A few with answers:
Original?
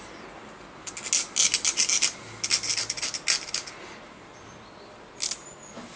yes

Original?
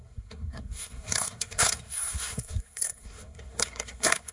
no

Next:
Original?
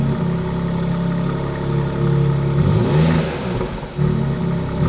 yes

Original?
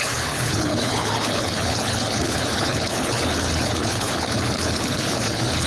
no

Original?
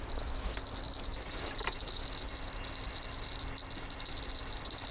yes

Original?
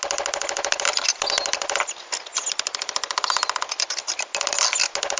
yes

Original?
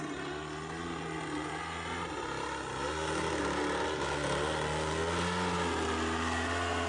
yes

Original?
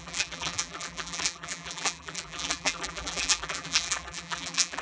no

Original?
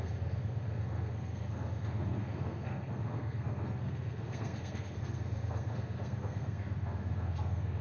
no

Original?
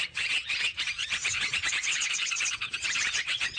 no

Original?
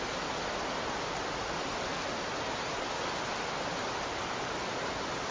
yes